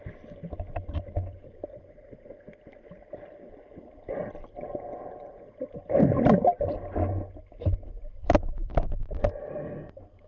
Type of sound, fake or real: real